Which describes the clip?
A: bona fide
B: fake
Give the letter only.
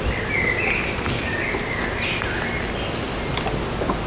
A